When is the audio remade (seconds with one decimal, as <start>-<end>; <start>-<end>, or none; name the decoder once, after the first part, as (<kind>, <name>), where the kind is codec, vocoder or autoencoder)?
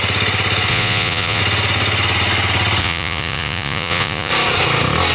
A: 0.7-1.4 (vocoder, Vocos); 2.8-4.3